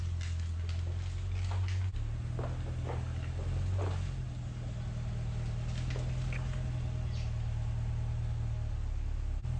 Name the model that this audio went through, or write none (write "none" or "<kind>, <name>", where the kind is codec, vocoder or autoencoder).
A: none